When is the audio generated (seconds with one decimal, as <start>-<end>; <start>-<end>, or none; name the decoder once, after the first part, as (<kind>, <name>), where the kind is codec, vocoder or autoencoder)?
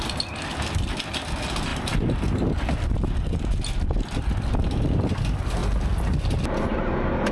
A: none